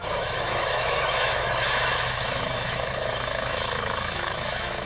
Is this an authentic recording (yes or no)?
no